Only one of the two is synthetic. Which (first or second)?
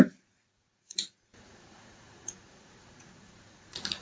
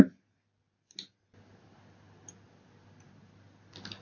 first